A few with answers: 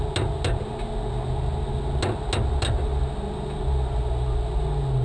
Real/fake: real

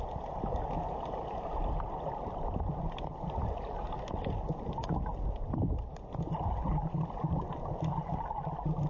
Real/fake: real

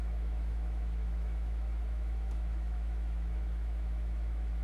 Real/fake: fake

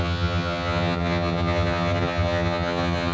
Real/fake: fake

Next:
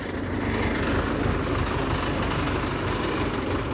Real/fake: real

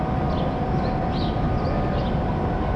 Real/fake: real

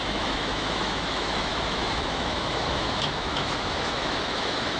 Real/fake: fake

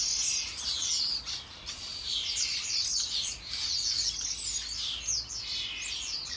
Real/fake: real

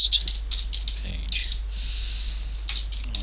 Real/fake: real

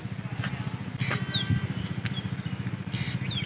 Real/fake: real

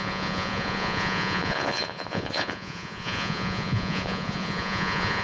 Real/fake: fake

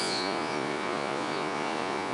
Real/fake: fake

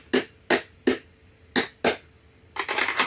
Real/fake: real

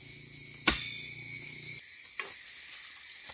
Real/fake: real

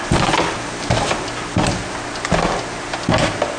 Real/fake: real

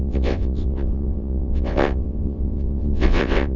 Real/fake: fake